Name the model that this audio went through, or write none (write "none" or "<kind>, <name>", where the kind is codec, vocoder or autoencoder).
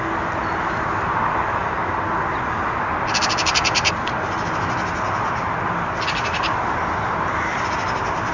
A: none